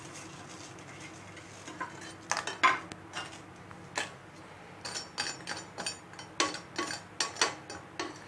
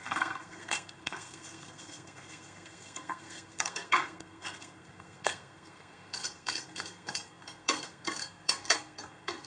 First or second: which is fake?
second